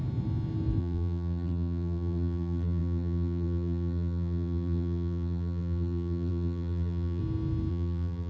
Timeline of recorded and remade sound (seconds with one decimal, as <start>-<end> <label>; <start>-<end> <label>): 0.0-0.8 recorded; 0.8-7.2 remade; 7.2-7.7 recorded; 7.7-8.3 remade